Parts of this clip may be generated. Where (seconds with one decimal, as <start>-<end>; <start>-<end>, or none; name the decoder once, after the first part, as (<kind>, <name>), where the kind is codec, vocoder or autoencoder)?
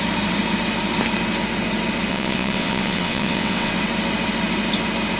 2.1-3.7 (vocoder, WaveNeXt)